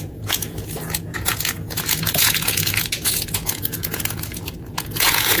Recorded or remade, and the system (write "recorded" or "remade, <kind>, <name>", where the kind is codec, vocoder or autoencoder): remade, vocoder, Vocos